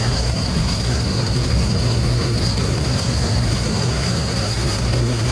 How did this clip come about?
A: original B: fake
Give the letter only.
B